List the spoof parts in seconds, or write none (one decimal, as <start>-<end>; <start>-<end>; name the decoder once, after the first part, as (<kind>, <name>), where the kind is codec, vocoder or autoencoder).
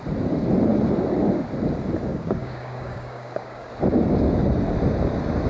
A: 2.1-3.7 (codec, DAC)